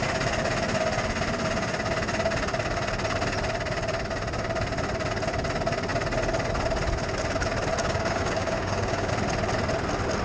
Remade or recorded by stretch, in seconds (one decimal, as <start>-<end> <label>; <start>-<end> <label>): 0.0-7.8 recorded; 7.8-9.1 remade; 9.1-10.2 recorded